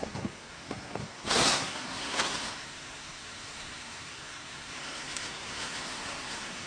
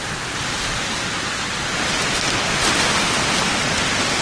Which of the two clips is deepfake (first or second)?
first